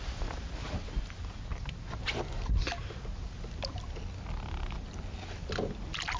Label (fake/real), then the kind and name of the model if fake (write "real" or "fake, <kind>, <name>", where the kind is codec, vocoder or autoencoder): real